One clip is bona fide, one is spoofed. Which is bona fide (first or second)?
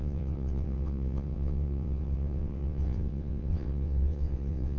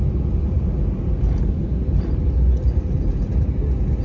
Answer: second